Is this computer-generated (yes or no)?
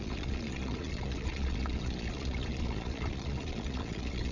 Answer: yes